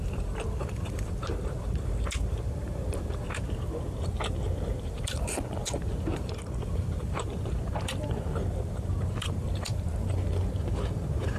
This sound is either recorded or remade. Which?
remade